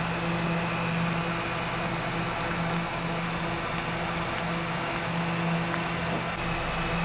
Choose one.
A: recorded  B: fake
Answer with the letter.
A